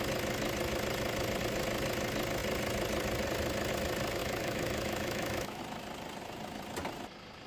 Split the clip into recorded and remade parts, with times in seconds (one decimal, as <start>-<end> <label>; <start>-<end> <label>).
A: 0.0-4.2 recorded; 4.2-5.6 remade; 5.6-7.5 recorded